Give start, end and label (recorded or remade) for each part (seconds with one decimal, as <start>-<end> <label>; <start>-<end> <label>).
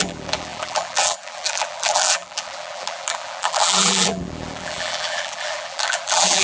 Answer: 0.0-6.4 remade